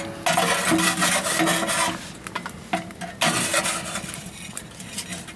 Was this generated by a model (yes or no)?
no